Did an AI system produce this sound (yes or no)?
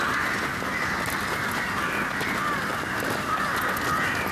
no